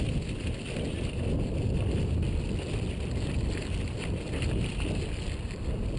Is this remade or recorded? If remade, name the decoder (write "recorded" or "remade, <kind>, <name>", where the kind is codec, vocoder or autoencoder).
recorded